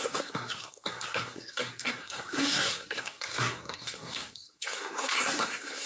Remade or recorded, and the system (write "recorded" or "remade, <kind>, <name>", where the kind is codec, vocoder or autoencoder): remade, codec, SNAC